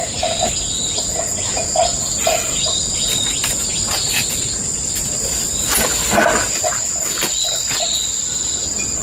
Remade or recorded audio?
recorded